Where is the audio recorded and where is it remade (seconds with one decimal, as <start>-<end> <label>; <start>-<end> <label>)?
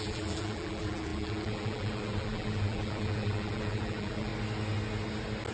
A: 0.0-4.3 remade; 4.3-5.5 recorded